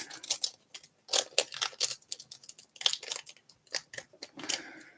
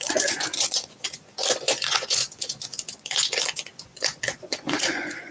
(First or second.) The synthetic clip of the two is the second